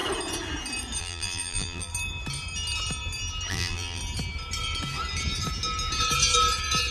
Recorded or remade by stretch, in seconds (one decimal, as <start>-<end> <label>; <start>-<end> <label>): 0.0-1.0 recorded; 1.0-1.9 remade; 1.9-3.5 recorded; 3.5-4.0 remade; 4.0-6.9 recorded